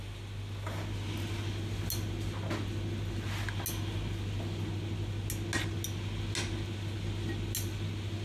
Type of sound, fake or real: real